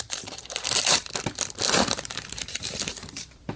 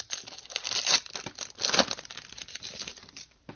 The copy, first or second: first